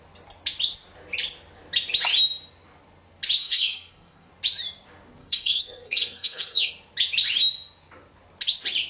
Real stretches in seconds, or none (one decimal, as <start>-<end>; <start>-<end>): 0.0-3.4; 4.3-5.2; 6.7-8.9